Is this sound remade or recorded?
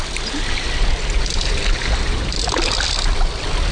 recorded